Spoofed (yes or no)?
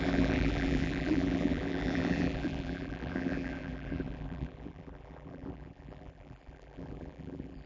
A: yes